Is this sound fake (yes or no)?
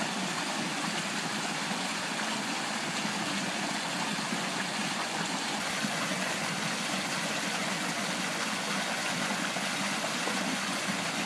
yes